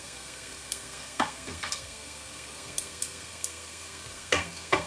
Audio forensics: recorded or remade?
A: remade